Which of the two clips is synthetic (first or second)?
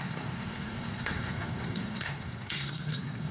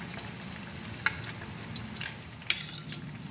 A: first